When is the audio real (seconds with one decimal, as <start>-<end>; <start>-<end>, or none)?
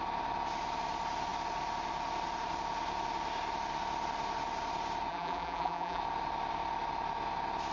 0.0-5.1; 6.0-7.7